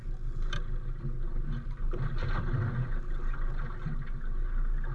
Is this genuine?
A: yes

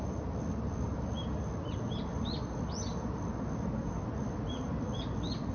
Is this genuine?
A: yes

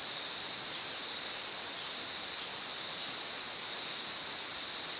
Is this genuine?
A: yes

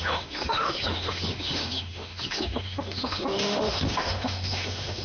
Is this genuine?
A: no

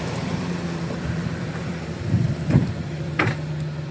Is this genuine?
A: no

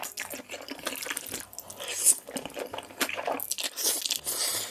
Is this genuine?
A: yes